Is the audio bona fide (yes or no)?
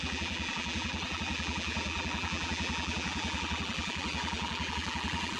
no